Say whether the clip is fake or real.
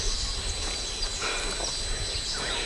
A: real